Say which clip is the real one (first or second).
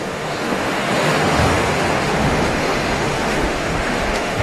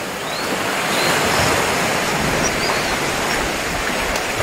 second